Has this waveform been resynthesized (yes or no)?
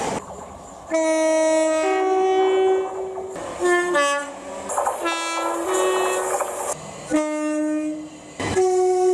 no